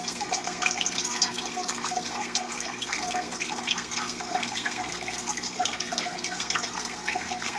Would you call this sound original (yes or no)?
no